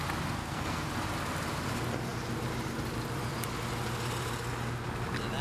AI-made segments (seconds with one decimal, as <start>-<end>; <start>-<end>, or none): 0.4-0.9